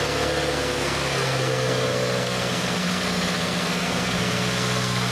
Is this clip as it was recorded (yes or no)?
no